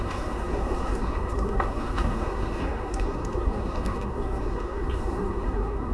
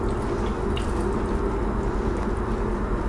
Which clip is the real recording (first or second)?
second